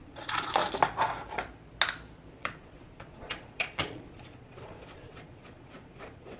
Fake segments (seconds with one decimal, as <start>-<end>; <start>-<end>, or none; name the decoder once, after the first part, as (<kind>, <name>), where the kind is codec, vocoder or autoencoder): 0.0-0.6 (vocoder, Vocos); 2.3-6.4